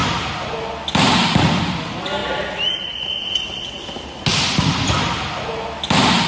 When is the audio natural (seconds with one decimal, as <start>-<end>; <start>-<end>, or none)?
0.0-2.2; 4.2-6.3

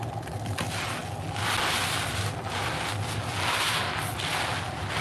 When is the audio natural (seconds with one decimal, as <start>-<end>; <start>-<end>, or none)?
0.0-5.0

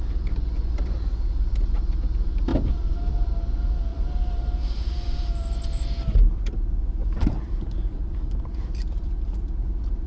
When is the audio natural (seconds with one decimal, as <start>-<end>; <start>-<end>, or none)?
0.0-3.9; 5.6-7.0; 8.5-10.1

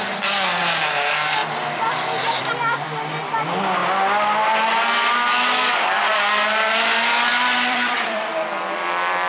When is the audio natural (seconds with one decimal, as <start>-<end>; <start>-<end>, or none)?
0.0-7.3

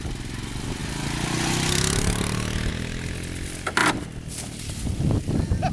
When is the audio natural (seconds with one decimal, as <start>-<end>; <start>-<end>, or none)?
0.0-5.7

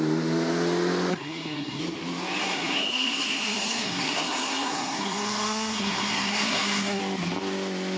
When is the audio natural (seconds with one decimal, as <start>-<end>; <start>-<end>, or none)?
0.0-1.1; 1.8-2.4; 7.0-8.0